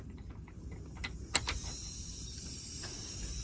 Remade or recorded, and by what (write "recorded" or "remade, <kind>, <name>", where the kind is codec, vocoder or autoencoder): recorded